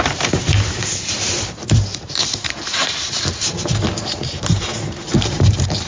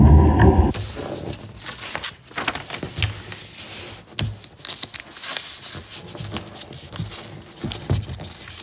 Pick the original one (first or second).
second